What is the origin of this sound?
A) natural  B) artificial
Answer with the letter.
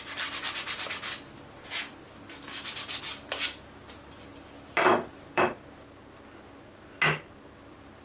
A